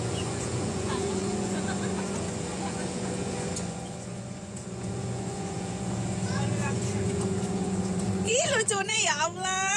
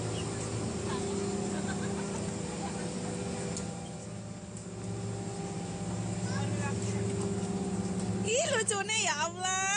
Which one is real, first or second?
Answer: second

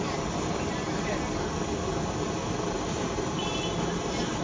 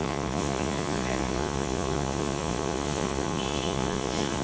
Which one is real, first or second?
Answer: first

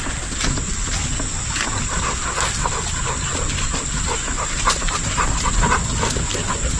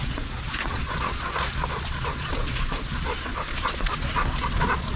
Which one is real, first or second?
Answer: first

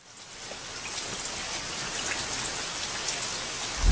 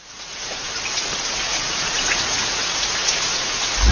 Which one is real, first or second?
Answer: first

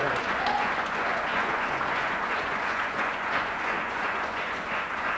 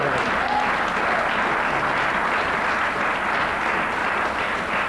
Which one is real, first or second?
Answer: second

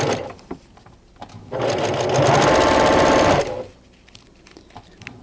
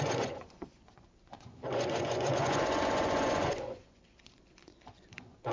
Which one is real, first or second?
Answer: first